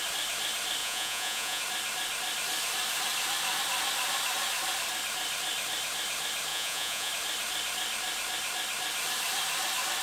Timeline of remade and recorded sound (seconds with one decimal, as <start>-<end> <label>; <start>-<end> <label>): 0.0-0.8 recorded; 0.8-1.6 remade; 1.6-6.5 recorded; 6.5-7.1 remade; 7.1-10.0 recorded